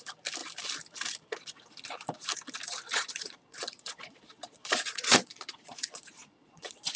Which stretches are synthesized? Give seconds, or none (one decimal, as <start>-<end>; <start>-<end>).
2.9-7.0